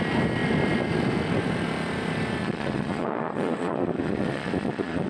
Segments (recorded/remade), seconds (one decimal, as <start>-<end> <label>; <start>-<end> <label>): 0.0-2.4 recorded; 2.4-5.1 remade